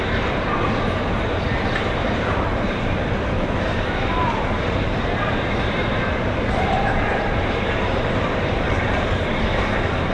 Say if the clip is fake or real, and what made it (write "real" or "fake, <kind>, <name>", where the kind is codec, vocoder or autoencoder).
fake, vocoder, BigVGAN v2